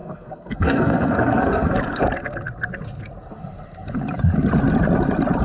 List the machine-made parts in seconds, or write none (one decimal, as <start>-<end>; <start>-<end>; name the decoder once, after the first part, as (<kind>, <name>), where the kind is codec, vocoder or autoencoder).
0.0-1.7 (codec, SNAC)